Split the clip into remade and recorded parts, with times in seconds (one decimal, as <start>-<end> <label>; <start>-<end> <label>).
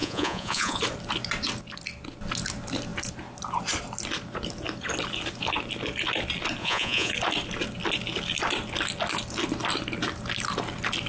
0.0-0.8 remade; 0.8-6.6 recorded; 6.6-7.1 remade; 7.1-11.1 recorded